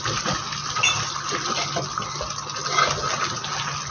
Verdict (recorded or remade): recorded